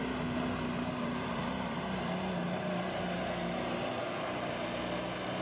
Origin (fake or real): real